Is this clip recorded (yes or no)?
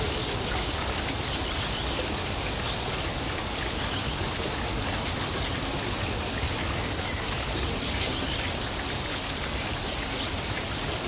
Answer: yes